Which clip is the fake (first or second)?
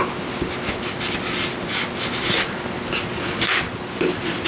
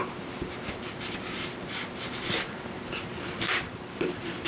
second